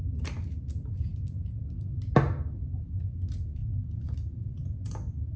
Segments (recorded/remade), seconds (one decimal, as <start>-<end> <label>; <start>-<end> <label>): 0.0-5.4 recorded